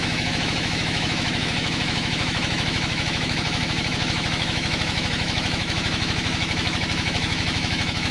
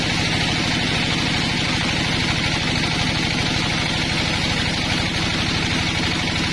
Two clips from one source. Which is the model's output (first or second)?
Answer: first